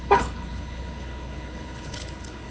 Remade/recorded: remade